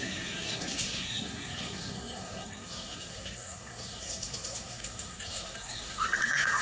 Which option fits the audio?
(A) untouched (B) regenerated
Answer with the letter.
B